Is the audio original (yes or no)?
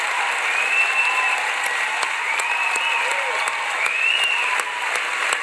yes